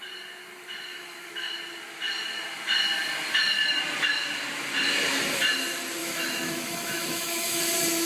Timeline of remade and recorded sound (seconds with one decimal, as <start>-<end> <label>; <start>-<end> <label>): 0.0-0.9 recorded; 0.9-1.5 remade; 1.5-6.0 recorded; 6.0-7.6 remade; 7.6-8.1 recorded